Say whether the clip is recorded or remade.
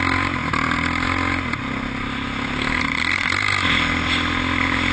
recorded